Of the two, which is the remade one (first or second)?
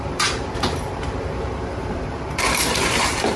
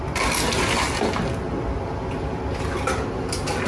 first